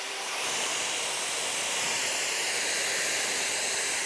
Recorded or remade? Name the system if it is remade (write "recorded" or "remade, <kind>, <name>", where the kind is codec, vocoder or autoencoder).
recorded